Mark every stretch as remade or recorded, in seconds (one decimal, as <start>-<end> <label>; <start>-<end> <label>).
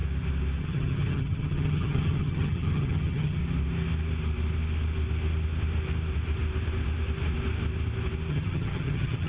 0.0-0.6 recorded; 0.6-3.4 remade; 3.4-8.3 recorded; 8.3-9.3 remade